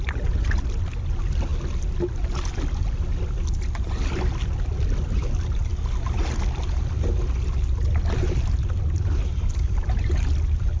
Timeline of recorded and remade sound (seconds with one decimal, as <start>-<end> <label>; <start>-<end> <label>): 0.0-10.8 recorded